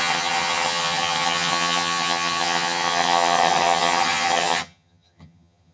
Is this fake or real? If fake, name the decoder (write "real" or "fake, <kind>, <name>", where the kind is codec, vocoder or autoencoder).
fake, vocoder, HiFi-GAN